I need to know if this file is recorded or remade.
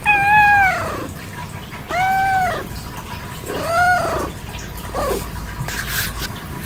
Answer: recorded